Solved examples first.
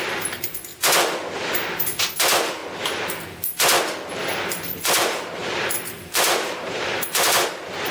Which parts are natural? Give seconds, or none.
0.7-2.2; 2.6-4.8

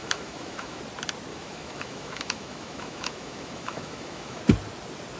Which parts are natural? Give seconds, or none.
0.8-1.3; 4.4-5.2

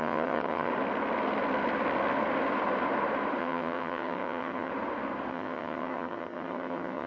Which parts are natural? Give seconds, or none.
0.7-3.4; 4.7-5.3